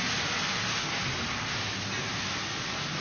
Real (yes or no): yes